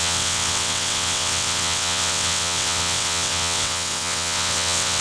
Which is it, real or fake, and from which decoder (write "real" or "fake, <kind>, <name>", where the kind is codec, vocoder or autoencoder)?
fake, vocoder, WaveNeXt